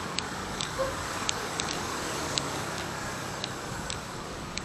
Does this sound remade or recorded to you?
remade